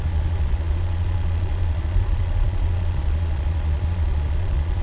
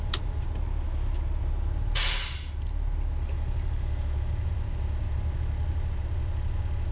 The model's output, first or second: first